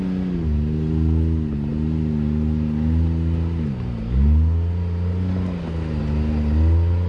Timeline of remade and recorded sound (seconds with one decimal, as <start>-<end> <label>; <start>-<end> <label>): 0.0-7.1 recorded